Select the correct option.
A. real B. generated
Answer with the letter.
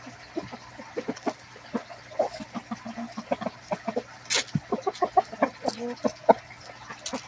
A